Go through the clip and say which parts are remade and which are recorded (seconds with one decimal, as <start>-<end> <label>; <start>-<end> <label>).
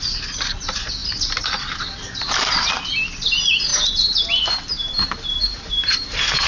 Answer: 0.0-1.0 recorded; 1.0-1.6 remade; 1.6-3.7 recorded; 3.7-6.5 remade